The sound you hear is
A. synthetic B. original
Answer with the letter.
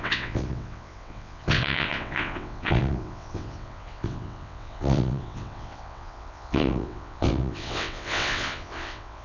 A